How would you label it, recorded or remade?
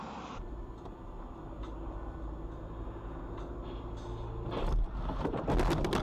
recorded